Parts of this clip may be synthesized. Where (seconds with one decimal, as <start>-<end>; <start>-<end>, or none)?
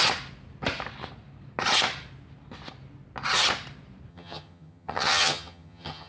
4.1-6.1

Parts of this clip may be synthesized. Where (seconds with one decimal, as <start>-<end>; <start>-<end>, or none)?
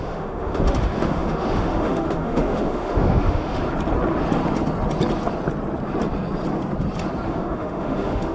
0.0-3.6; 7.3-8.3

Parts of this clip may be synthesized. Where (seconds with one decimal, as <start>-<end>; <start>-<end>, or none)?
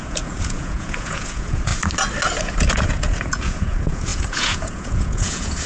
0.0-1.7; 2.4-5.7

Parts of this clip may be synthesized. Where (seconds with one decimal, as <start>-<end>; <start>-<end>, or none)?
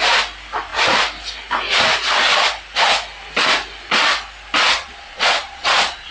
4.6-6.1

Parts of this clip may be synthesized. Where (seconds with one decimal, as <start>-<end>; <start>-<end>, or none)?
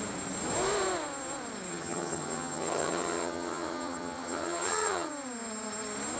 1.7-5.1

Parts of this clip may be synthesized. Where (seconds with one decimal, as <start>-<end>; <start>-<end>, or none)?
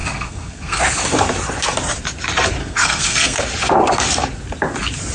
0.0-0.8; 2.6-3.4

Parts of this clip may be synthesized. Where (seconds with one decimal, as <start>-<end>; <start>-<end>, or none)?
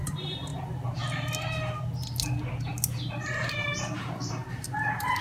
0.0-0.5; 3.6-5.2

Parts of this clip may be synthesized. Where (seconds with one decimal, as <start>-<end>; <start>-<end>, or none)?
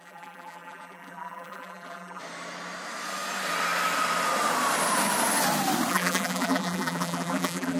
0.0-2.2; 5.9-7.8